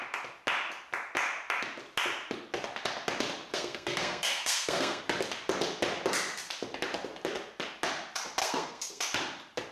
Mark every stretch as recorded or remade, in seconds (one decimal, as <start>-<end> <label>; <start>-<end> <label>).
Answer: 0.0-3.5 recorded; 3.5-5.0 remade; 5.0-8.4 recorded; 8.4-9.0 remade; 9.0-9.7 recorded